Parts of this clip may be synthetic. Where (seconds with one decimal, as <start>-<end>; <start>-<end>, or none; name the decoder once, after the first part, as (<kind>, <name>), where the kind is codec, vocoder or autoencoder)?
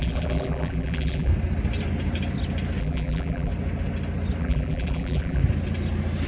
0.0-1.3 (vocoder, BigVGAN v2); 2.8-3.5; 4.4-5.4